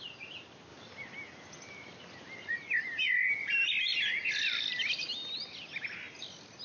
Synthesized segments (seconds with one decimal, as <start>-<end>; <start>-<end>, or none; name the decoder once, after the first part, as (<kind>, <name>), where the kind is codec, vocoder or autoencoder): none